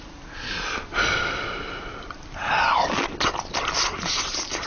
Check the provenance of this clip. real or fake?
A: real